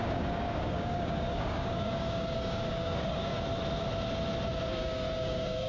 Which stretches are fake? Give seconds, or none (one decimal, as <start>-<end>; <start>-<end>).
0.0-3.3; 4.7-5.7